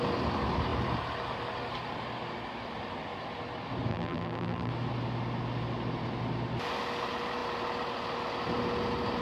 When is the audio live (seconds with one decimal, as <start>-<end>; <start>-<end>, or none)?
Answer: 0.0-3.9; 4.7-9.2

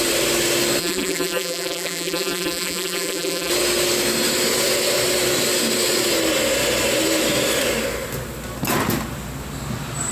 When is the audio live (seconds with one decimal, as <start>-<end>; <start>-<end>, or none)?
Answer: 0.0-0.8; 3.5-10.1

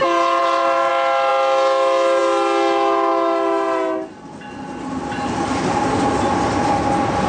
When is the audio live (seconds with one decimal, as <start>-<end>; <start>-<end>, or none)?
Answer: 0.0-0.4; 0.9-7.3

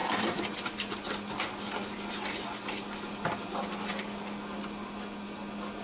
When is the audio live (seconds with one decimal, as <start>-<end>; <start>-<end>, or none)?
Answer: 0.0-5.8